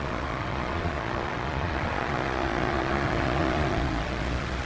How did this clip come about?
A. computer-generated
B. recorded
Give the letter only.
A